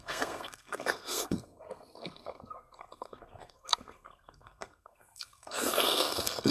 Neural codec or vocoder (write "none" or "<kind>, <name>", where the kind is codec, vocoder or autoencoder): codec, SNAC